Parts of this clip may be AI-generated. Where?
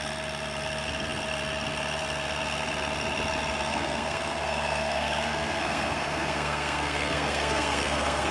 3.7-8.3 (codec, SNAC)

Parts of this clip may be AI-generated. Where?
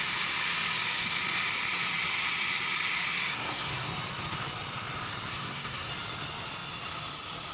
3.2-3.9 (codec, SNAC); 5.3-5.9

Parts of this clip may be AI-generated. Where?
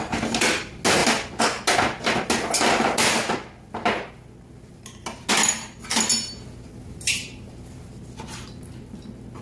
none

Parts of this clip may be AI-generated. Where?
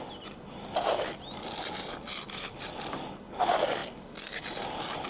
none